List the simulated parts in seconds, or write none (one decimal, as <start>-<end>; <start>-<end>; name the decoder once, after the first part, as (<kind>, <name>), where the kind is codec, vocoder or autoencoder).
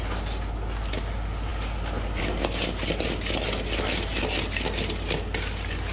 none